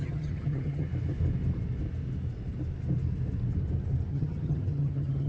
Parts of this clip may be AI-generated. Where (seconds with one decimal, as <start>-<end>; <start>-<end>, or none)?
0.0-0.9; 4.1-5.3